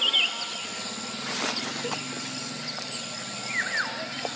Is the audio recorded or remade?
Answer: recorded